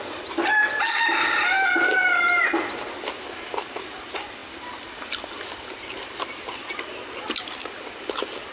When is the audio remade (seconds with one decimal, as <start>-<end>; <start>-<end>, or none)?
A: 4.4-6.7